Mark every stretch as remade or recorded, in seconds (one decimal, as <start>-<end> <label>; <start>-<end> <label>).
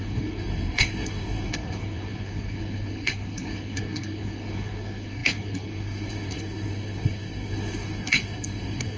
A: 0.0-9.0 remade